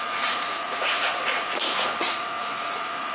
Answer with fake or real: fake